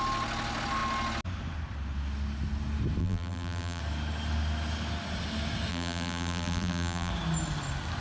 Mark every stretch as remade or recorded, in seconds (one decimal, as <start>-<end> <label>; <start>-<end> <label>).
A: 0.0-3.0 recorded; 3.0-3.8 remade; 3.8-5.7 recorded; 5.7-7.1 remade; 7.1-8.0 recorded